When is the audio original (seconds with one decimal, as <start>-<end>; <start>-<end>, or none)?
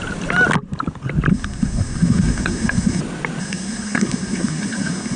0.0-1.3; 3.0-3.4